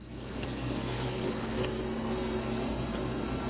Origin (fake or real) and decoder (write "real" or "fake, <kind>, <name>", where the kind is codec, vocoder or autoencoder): fake, codec, SNAC